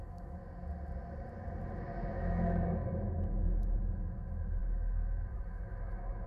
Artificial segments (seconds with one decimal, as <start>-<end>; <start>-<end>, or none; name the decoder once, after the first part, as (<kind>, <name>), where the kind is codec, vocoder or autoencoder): 0.0-0.4 (autoencoder, DAC-VAE); 2.1-6.3